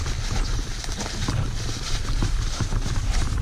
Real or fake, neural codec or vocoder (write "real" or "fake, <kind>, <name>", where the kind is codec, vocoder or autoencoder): fake, vocoder, BigVGAN v2